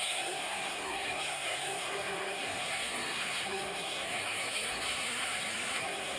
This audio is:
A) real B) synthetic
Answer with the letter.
B